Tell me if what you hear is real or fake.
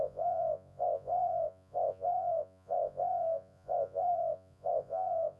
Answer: fake